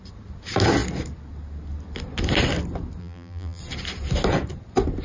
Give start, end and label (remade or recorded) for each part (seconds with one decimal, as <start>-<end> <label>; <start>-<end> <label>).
0.0-3.0 recorded; 3.0-3.6 remade; 3.6-5.0 recorded